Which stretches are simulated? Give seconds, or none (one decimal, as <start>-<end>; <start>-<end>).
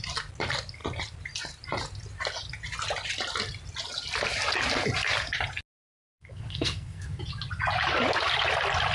6.1-7.2